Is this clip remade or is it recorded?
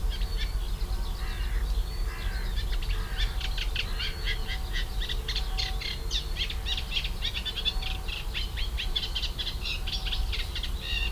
recorded